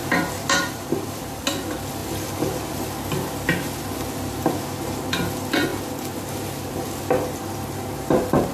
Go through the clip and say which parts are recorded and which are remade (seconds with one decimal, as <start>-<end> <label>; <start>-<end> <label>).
0.0-1.4 remade; 1.4-2.0 recorded; 2.0-2.6 remade; 2.6-8.5 recorded